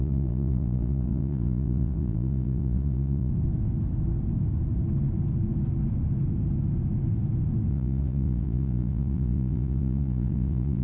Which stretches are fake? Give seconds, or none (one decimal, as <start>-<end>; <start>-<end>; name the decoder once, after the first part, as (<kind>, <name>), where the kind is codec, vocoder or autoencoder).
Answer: 0.0-3.3 (vocoder, Vocos); 7.7-10.8